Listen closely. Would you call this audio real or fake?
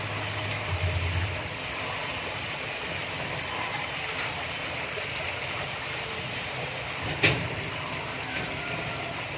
real